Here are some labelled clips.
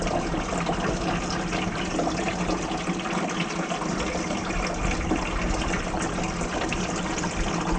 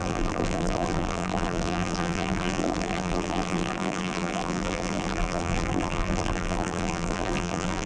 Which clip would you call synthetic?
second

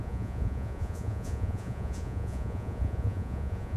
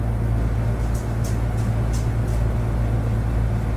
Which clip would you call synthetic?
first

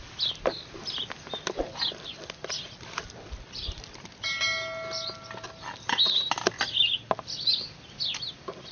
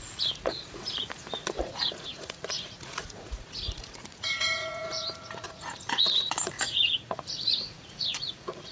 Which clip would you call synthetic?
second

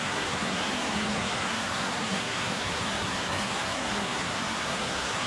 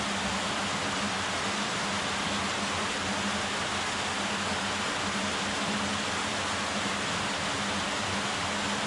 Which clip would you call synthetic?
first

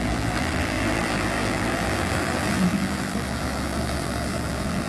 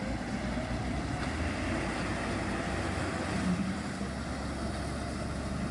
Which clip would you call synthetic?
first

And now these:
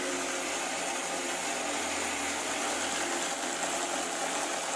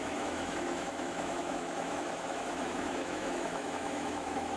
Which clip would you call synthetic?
second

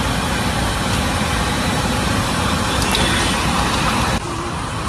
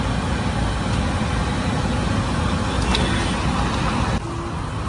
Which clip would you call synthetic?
first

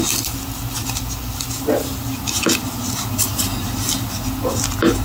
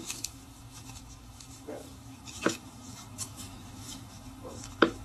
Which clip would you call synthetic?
second